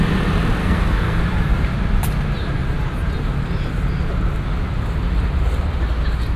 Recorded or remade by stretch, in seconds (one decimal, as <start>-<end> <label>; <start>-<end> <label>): 0.0-0.6 recorded; 0.6-1.2 remade; 1.2-6.4 recorded